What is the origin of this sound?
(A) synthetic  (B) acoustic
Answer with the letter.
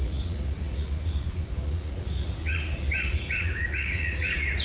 A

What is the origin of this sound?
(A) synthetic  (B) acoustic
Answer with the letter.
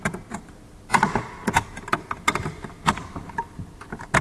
B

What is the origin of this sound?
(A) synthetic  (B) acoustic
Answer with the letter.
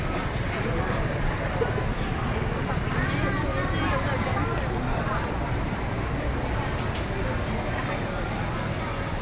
B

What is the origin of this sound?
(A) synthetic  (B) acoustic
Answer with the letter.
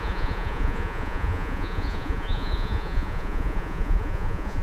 A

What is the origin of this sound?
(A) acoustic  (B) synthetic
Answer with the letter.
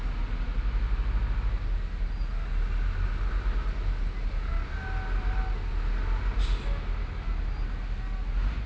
A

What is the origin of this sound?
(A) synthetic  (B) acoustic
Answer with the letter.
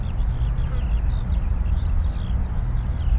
B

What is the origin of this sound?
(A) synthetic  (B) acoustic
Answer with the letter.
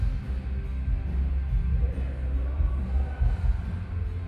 B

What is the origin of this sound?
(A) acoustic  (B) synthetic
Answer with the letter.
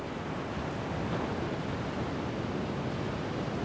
A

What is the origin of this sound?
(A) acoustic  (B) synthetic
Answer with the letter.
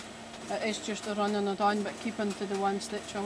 A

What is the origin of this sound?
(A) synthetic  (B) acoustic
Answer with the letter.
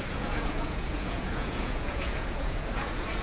A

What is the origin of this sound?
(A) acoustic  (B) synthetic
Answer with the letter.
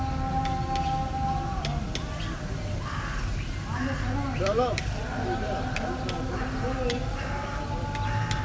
A